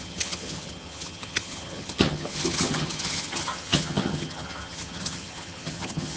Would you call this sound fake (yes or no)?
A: yes